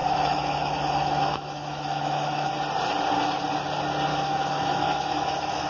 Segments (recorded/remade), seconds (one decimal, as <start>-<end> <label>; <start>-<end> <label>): 0.0-2.5 remade; 2.5-4.1 recorded; 4.1-5.7 remade